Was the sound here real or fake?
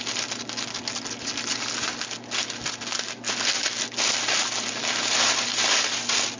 real